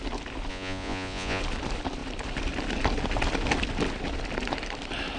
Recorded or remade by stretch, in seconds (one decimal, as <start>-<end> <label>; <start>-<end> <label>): 0.0-0.5 recorded; 0.5-1.4 remade; 1.4-5.2 recorded